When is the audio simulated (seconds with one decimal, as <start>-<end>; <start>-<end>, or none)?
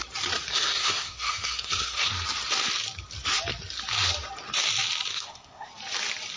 0.5-2.1; 5.1-5.7